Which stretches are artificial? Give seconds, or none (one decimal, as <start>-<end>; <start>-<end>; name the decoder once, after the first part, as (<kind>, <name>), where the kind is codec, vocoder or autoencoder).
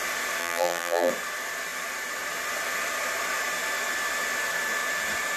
0.4-1.1 (vocoder, BigVGAN v2)